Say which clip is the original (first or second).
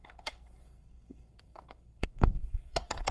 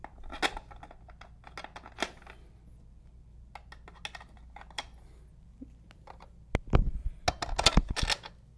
second